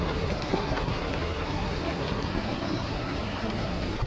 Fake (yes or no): yes